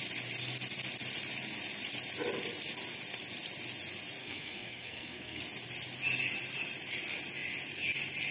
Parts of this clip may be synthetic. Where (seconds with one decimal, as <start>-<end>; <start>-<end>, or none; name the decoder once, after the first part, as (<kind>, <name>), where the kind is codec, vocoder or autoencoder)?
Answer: 4.2-5.4 (codec, SNAC)